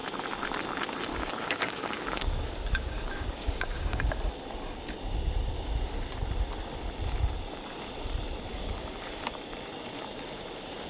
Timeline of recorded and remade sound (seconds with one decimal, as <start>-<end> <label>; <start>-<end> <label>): 0.0-1.1 recorded; 1.1-4.1 remade; 4.1-8.5 recorded; 8.5-9.1 remade; 9.1-10.9 recorded